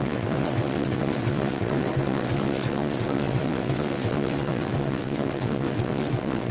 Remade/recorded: remade